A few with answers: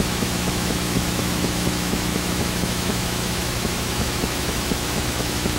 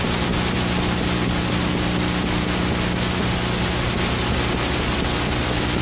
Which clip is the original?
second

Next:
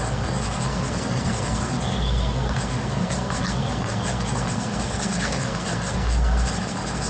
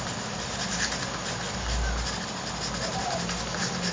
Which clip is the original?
second